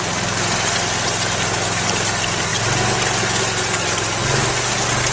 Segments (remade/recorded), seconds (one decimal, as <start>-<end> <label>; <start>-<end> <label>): 0.0-5.1 recorded